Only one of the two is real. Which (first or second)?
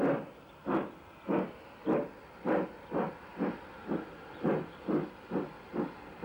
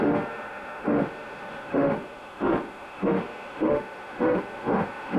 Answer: first